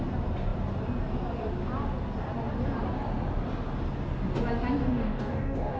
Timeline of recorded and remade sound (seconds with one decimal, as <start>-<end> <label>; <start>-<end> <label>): 0.0-4.8 recorded; 4.8-5.8 remade